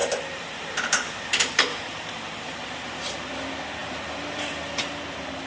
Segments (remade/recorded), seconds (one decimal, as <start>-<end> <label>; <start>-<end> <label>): 0.0-3.3 remade; 3.3-5.5 recorded

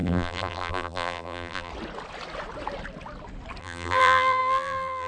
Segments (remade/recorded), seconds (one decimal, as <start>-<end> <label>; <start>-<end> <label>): 0.0-1.7 remade; 1.7-3.6 recorded; 3.6-5.1 remade

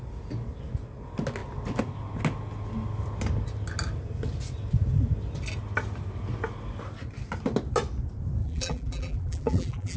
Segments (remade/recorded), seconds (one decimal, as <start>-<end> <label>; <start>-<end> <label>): 0.0-8.4 recorded; 8.4-10.0 remade

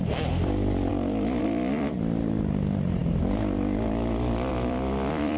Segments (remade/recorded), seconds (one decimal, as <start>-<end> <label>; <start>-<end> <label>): 0.0-0.9 remade; 0.9-1.4 recorded; 1.4-3.0 remade; 3.0-4.5 recorded; 4.5-5.4 remade

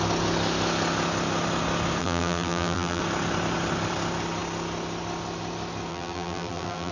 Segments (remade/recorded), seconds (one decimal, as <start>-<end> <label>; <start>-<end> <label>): 0.0-2.0 recorded; 2.0-3.0 remade; 3.0-5.9 recorded; 5.9-6.9 remade

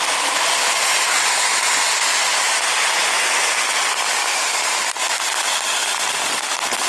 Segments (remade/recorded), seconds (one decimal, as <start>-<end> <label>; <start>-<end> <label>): 0.0-4.1 recorded; 4.1-5.9 remade; 5.9-6.9 recorded

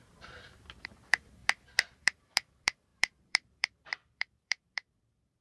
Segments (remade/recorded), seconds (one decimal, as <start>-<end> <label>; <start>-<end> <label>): 0.0-1.4 remade; 1.4-2.0 recorded; 2.0-5.4 remade

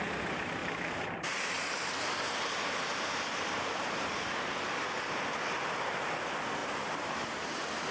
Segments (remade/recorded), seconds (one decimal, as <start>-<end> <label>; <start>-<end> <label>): 0.0-0.6 recorded; 0.6-4.7 remade; 4.7-6.6 recorded; 6.6-7.1 remade; 7.1-7.9 recorded